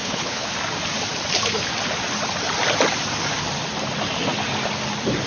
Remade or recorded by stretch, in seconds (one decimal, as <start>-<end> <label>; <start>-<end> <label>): 0.0-0.5 remade; 0.5-5.3 recorded

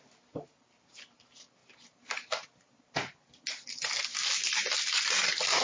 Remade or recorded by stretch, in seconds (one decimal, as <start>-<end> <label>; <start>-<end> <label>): 0.0-5.6 recorded

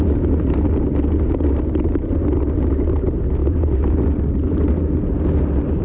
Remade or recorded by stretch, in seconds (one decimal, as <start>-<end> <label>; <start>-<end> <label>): 0.0-5.8 recorded

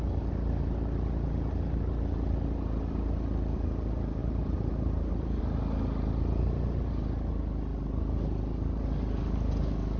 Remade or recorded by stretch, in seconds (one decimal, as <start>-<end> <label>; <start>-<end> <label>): 0.0-4.2 recorded; 4.2-5.4 remade; 5.4-10.0 recorded

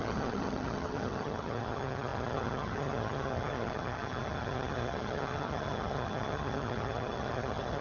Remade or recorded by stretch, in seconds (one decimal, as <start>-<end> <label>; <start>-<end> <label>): 0.0-7.8 remade